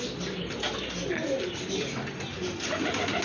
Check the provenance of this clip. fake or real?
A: real